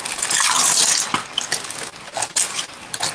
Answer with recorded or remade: recorded